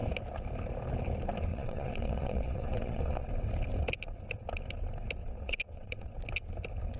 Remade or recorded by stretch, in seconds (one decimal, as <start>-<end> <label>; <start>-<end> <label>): 0.0-1.5 recorded; 1.5-3.3 remade; 3.3-5.2 recorded; 5.2-6.1 remade; 6.1-7.0 recorded